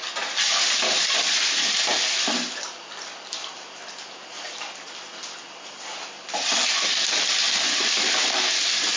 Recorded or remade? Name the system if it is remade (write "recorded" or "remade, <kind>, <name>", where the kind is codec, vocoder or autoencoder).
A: recorded